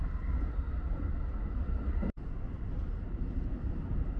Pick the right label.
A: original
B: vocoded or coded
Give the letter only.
A